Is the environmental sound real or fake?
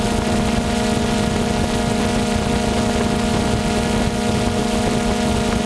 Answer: real